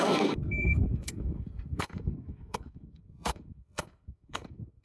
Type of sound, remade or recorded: remade